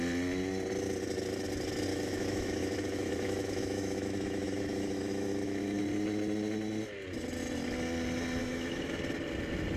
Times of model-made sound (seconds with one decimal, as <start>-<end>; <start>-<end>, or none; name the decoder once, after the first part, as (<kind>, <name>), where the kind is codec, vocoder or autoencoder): 1.9-5.8 (autoencoder, DAC-VAE); 8.4-9.0